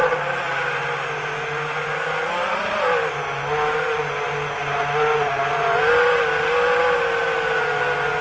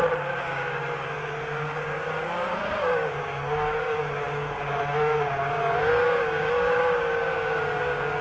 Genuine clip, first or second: first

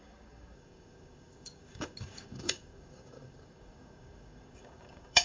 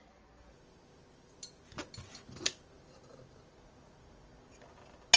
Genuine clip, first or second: second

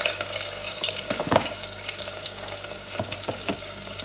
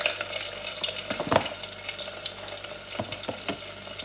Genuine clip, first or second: second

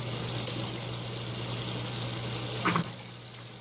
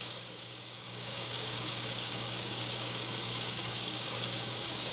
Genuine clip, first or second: first